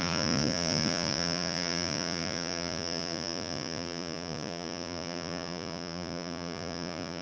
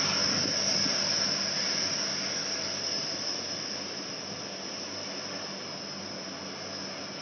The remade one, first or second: first